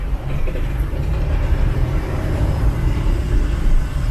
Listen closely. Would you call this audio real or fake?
fake